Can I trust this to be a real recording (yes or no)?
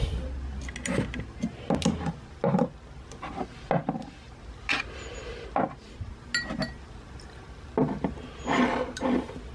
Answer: yes